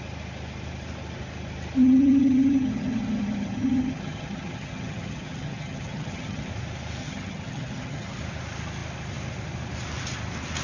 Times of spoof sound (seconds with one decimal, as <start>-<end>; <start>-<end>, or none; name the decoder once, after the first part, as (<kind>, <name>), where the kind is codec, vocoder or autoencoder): 1.8-6.5 (vocoder, HiFi-GAN); 7.0-8.2